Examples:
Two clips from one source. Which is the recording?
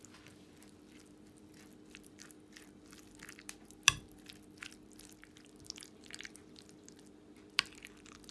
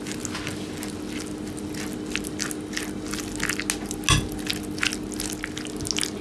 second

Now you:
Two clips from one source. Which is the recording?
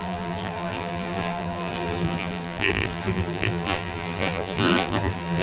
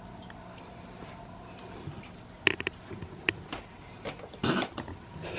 second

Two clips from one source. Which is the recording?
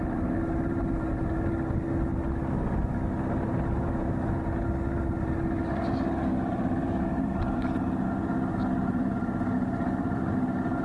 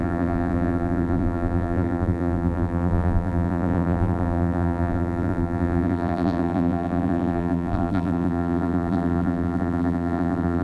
first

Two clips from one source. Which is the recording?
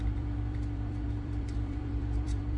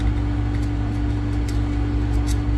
second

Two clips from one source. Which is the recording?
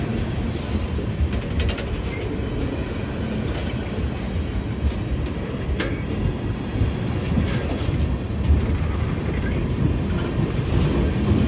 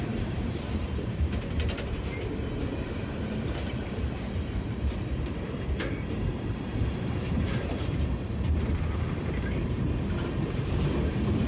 first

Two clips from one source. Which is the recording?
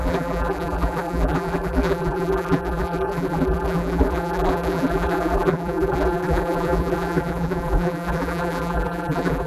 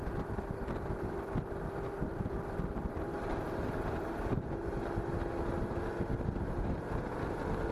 second